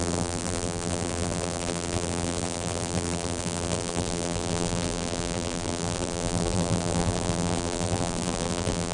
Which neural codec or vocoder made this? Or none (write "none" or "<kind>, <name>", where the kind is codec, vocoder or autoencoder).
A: vocoder, BigVGAN v2